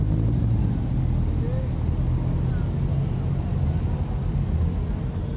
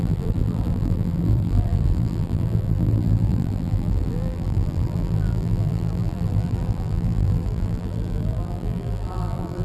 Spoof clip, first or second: second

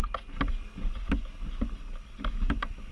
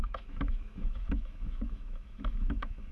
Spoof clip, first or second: second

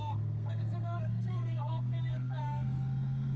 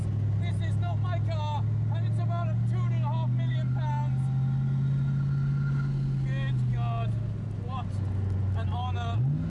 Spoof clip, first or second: first